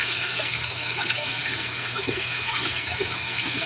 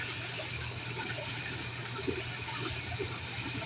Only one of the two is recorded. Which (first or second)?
second